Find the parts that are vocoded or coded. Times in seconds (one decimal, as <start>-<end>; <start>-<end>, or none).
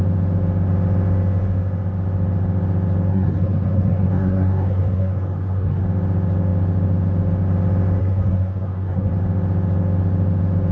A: 3.1-5.8; 8.0-9.1